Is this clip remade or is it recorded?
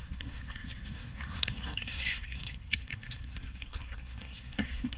remade